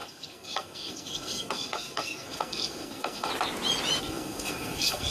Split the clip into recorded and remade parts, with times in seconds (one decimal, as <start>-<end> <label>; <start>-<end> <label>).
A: 0.0-3.3 remade; 3.3-4.0 recorded; 4.0-5.1 remade